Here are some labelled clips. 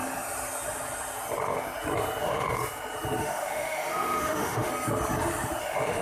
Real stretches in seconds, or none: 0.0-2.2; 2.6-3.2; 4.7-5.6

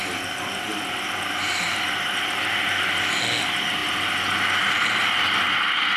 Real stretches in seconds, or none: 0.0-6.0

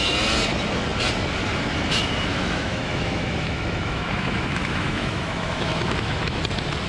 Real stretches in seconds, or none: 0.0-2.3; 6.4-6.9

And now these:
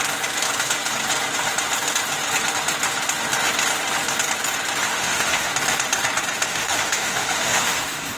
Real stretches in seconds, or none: 0.0-4.8; 5.5-6.5

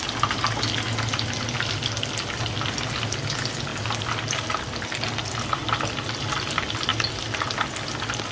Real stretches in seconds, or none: 0.0-8.3